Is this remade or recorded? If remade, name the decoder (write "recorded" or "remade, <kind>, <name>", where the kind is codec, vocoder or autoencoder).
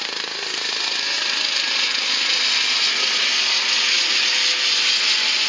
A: recorded